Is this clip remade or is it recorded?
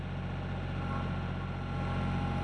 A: recorded